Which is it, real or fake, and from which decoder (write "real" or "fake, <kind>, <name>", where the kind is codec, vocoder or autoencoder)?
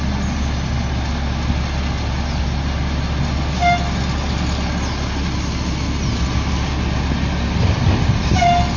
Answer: real